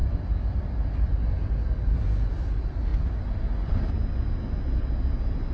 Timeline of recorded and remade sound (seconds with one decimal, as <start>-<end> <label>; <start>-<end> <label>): 0.0-5.5 recorded